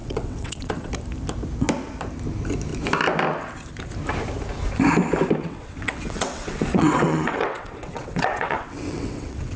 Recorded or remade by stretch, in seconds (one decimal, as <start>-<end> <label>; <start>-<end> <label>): 0.0-0.9 remade; 0.9-5.4 recorded; 5.4-9.6 remade